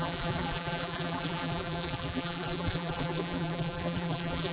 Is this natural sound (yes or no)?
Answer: no